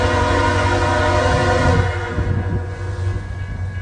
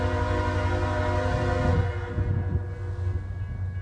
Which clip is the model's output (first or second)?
first